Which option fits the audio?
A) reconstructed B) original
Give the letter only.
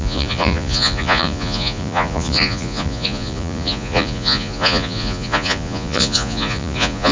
A